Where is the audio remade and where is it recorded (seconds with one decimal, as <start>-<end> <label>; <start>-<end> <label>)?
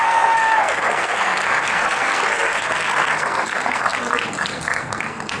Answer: 0.0-5.4 remade